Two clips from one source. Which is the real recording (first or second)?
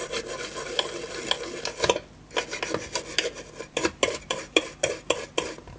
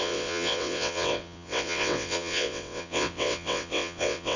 first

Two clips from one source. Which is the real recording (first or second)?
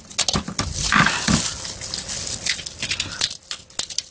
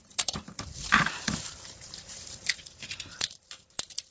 first